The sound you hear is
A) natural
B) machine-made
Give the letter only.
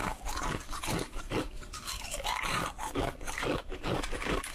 B